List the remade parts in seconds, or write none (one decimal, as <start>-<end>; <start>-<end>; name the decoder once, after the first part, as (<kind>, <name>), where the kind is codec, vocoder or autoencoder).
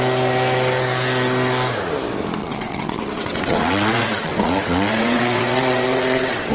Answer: 2.4-6.5 (vocoder, WaveNeXt)